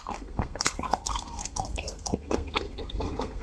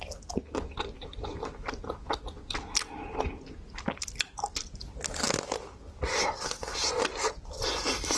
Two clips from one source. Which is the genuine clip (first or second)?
second